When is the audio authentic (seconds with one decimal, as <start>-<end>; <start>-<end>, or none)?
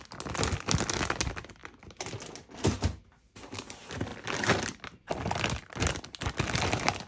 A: 0.0-1.6; 2.3-4.1